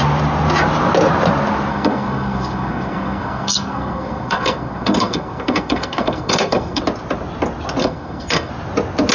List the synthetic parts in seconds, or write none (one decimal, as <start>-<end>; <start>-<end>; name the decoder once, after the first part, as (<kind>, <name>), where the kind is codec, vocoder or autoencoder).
1.7-6.8 (codec, SNAC); 7.8-8.5